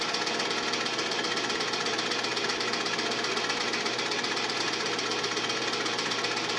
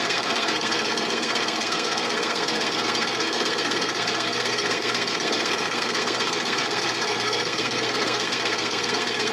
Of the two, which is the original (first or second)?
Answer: first